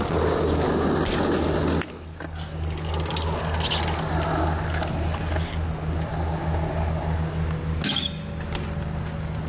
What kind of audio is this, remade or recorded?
recorded